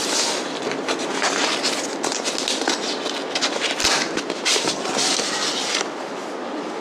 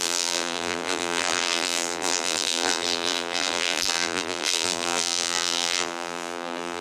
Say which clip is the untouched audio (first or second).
first